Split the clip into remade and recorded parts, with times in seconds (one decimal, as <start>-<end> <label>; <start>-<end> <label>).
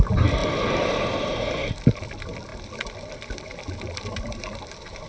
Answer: 0.0-5.1 remade